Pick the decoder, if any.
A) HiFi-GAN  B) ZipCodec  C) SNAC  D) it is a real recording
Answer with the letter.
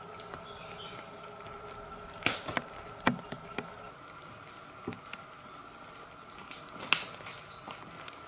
D